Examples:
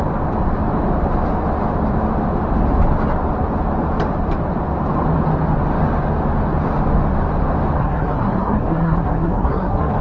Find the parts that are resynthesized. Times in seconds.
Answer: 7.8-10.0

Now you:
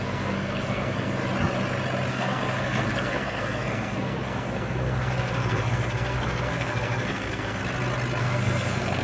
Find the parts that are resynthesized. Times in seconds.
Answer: 0.0-1.2; 2.1-7.6; 8.2-9.0

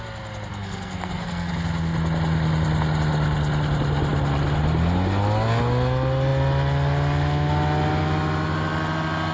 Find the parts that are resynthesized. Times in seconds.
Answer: 0.5-1.5

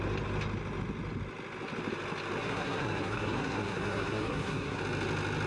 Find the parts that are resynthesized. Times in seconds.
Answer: 2.4-4.8

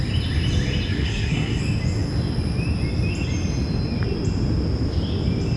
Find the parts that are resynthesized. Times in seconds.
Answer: 0.9-1.6